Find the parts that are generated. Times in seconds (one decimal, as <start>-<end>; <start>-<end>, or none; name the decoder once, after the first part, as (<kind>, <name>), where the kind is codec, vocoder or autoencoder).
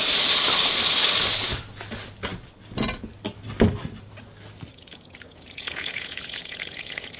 4.7-7.2 (vocoder, Vocos)